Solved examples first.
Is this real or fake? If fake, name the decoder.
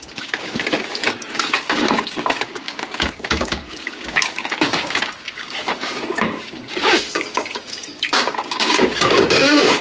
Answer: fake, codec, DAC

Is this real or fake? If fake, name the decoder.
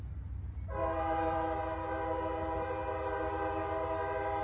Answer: real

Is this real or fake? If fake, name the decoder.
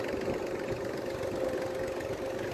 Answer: real